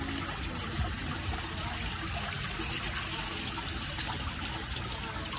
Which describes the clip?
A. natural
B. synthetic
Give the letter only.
A